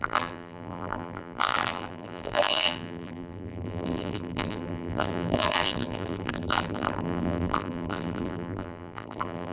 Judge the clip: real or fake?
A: fake